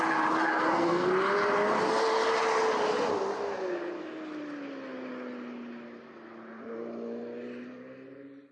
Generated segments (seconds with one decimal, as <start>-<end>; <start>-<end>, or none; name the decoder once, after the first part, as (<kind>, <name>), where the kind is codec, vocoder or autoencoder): 0.5-1.1 (codec, SNAC)